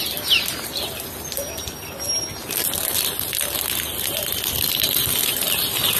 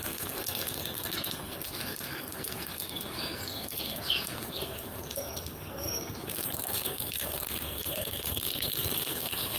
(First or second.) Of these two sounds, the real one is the first